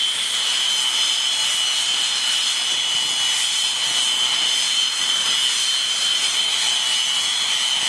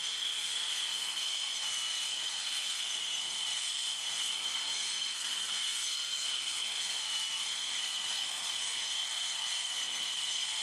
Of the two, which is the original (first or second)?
first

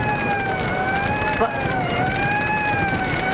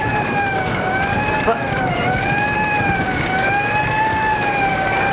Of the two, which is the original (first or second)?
first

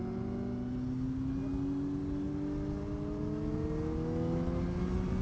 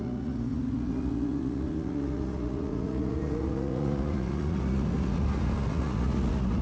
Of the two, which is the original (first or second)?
first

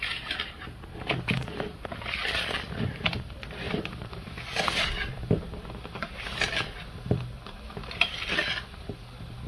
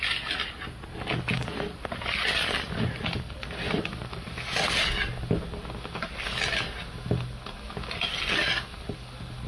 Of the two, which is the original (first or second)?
second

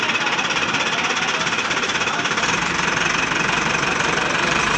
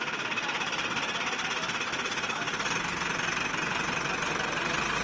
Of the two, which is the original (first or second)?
second